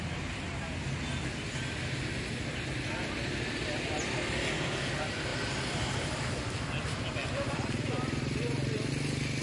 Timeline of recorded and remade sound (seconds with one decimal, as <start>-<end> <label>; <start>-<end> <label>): 0.0-7.2 recorded; 7.2-8.9 remade; 8.9-9.4 recorded